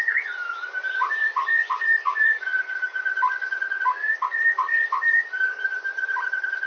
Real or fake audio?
fake